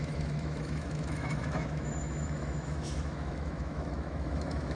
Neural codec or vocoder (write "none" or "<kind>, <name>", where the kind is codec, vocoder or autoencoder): autoencoder, DAC-VAE